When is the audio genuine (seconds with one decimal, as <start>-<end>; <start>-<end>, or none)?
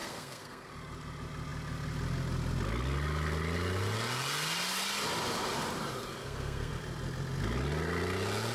0.7-6.2; 6.7-8.5